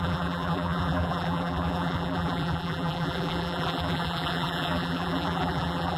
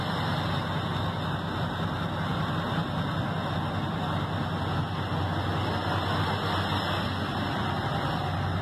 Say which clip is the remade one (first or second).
first